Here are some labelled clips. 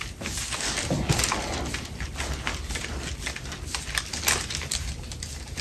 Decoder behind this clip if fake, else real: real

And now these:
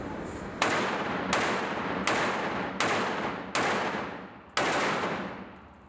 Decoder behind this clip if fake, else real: real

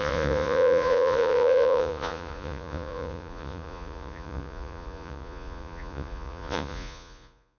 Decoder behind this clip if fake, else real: fake, vocoder, Vocos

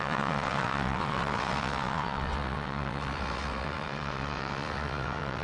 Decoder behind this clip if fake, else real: fake, vocoder, WaveNeXt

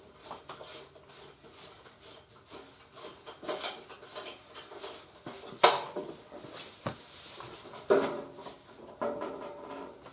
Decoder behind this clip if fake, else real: real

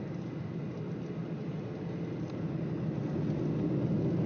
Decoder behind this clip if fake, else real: real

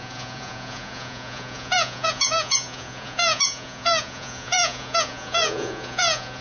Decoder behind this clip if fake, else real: fake, vocoder, Vocos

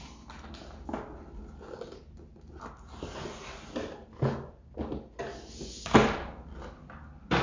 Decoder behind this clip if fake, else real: real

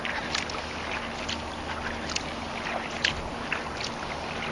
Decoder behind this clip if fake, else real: real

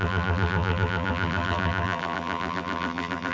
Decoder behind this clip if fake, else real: fake, vocoder, BigVGAN v2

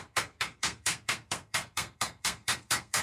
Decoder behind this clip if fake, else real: fake, codec, SNAC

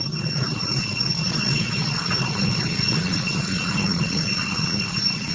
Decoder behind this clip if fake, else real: fake, vocoder, Vocos